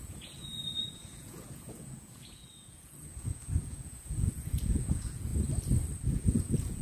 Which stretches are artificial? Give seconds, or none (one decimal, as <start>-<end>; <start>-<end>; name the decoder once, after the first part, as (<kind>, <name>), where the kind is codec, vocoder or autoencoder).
0.0-5.3 (vocoder, Vocos); 6.0-6.8